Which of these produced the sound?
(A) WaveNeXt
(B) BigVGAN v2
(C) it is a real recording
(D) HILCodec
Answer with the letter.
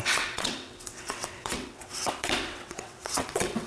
A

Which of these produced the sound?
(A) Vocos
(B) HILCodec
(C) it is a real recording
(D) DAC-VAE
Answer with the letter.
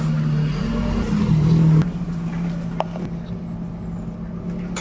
C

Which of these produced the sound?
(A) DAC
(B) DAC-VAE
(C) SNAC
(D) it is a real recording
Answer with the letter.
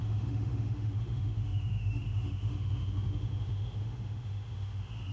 B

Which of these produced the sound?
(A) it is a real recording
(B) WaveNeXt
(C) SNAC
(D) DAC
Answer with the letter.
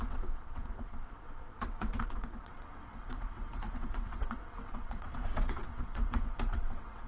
B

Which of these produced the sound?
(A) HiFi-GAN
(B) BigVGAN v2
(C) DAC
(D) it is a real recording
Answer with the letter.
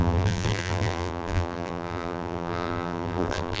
B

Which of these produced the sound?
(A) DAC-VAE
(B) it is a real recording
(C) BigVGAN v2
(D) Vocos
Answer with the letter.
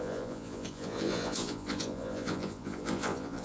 D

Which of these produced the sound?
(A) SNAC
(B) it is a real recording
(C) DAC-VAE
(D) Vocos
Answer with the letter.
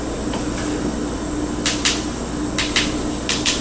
B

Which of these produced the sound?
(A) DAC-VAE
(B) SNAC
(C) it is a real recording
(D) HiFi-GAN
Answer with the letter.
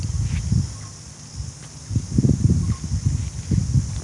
C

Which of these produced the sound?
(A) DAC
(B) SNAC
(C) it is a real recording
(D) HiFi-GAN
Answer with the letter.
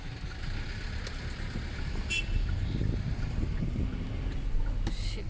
C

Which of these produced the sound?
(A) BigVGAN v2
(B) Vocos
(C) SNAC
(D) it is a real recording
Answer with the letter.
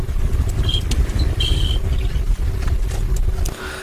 D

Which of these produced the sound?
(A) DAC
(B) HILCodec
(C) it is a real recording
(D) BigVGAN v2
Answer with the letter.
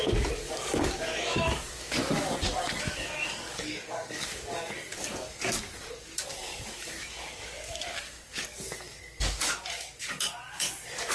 A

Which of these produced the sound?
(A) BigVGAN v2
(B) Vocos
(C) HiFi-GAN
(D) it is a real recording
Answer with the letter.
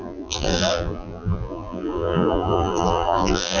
A